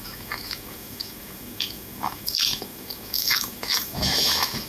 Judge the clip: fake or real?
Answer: fake